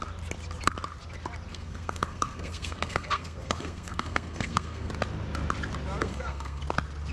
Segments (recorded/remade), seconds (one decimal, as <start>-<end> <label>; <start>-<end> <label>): 0.0-1.5 recorded; 1.5-4.9 remade; 4.9-6.0 recorded; 6.0-6.6 remade; 6.6-7.1 recorded

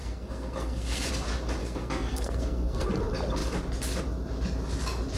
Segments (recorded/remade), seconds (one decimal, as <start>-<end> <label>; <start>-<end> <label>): 0.0-1.1 remade; 1.1-1.6 recorded; 1.6-2.9 remade; 2.9-5.2 recorded

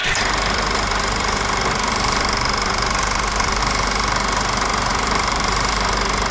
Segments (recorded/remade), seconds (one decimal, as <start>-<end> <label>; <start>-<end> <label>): 0.0-3.6 remade; 3.6-4.9 recorded; 4.9-5.7 remade; 5.7-6.3 recorded

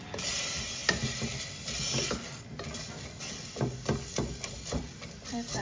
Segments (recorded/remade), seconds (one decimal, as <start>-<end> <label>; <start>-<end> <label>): 0.0-5.6 recorded